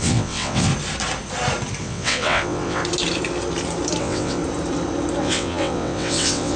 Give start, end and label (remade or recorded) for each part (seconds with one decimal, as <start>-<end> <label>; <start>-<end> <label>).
0.0-0.7 remade; 0.7-1.8 recorded; 1.8-2.8 remade; 2.8-4.0 recorded; 4.0-4.4 remade; 4.4-5.2 recorded; 5.2-6.6 remade